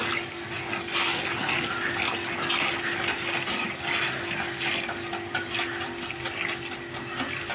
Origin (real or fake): real